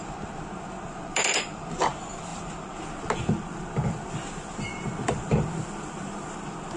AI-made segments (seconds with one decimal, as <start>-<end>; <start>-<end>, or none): 0.0-6.8